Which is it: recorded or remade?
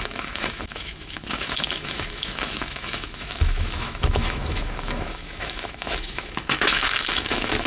remade